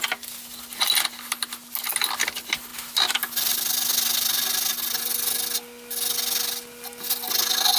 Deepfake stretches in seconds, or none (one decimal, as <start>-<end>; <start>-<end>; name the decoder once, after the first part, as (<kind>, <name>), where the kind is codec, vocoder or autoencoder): none